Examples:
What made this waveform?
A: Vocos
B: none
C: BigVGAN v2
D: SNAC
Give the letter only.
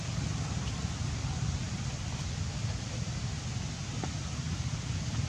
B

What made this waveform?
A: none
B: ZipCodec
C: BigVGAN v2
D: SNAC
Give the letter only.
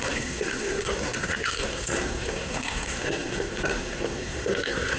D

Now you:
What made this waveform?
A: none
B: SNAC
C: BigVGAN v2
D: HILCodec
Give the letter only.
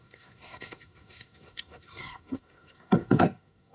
B